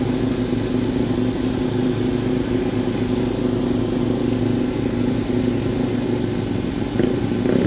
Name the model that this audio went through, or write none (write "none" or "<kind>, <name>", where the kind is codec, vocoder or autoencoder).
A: none